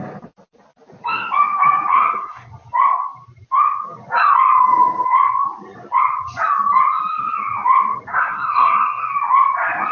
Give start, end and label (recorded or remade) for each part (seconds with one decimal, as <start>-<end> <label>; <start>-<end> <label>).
0.0-1.9 recorded; 1.9-2.5 remade; 2.5-8.1 recorded; 8.1-9.1 remade; 9.1-9.9 recorded